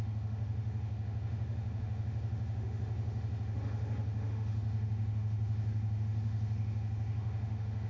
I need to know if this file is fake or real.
fake